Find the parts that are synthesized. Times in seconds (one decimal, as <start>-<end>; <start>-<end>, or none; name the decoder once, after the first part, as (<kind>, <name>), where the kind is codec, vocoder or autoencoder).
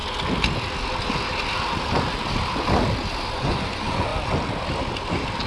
3.3-4.1 (vocoder, Vocos)